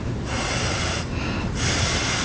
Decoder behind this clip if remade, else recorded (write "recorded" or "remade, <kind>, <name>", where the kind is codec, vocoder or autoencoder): recorded